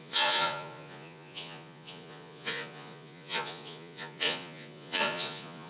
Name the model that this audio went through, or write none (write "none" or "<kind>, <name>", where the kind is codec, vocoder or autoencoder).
vocoder, Vocos